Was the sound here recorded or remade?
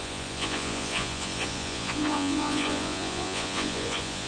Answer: remade